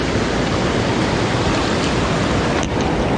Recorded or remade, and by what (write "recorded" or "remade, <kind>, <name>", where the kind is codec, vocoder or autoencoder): recorded